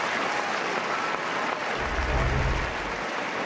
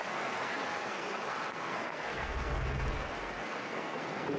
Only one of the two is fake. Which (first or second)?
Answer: second